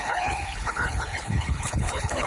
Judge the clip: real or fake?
fake